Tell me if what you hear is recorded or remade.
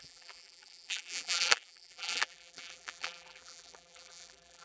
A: remade